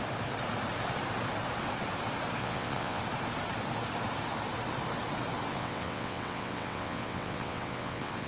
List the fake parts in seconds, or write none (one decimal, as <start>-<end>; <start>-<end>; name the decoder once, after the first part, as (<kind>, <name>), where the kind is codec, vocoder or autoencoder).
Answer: 2.4-3.0 (vocoder, WaveNeXt); 5.5-8.3